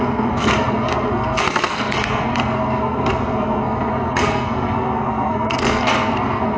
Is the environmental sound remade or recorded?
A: remade